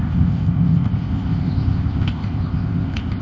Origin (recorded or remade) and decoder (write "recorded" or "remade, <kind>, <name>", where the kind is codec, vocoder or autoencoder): remade, codec, ZipCodec